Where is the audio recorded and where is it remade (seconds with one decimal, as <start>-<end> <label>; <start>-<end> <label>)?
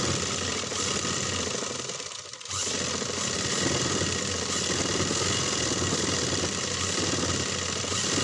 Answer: 0.0-8.2 recorded